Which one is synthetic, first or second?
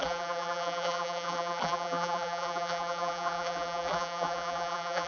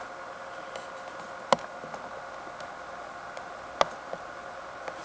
first